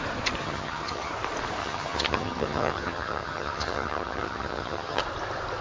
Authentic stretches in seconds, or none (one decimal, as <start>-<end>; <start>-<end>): 0.0-0.4; 1.1-1.6; 5.0-5.6